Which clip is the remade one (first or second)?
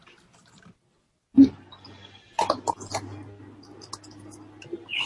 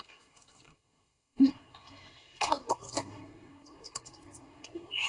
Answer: second